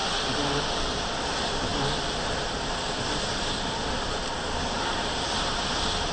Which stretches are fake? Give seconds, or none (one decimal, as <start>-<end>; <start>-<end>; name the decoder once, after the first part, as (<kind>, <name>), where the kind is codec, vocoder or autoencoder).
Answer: none